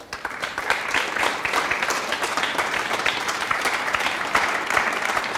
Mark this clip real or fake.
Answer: fake